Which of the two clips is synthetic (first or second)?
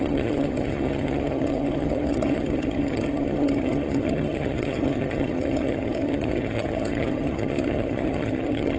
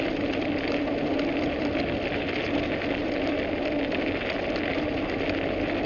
first